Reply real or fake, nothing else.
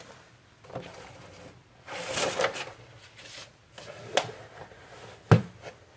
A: real